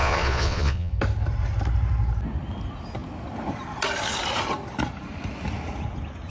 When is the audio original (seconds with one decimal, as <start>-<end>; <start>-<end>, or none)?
0.9-6.3